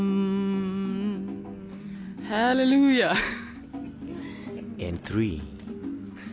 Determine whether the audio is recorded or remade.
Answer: recorded